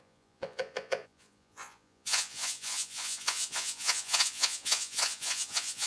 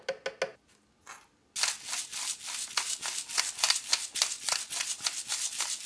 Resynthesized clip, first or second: first